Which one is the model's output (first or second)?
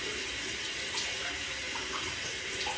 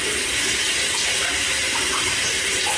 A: second